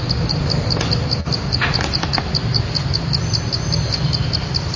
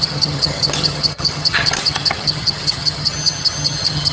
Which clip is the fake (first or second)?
second